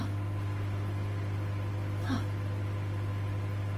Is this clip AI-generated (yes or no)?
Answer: no